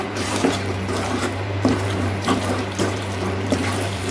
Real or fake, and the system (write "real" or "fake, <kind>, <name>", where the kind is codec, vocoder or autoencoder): fake, vocoder, BigVGAN v2